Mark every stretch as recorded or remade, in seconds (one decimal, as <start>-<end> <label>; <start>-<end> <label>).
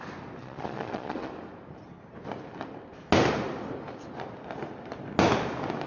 0.0-0.4 recorded; 0.4-1.3 remade; 1.3-5.9 recorded